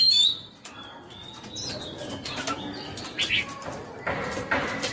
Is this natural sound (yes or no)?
yes